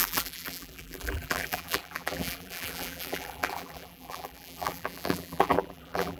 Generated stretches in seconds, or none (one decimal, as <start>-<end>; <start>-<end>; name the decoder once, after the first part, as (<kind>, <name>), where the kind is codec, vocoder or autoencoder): 0.0-6.2 (vocoder, BigVGAN v2)